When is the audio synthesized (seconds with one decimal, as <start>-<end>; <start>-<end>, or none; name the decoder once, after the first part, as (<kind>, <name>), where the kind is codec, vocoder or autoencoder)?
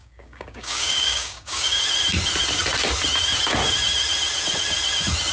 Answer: 0.0-1.8 (codec, DAC)